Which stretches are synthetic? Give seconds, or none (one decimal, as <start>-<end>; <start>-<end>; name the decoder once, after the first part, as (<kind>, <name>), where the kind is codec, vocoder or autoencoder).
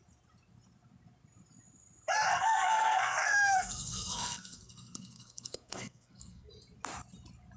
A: 2.3-6.5 (codec, SNAC)